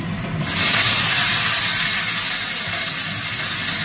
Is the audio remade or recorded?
recorded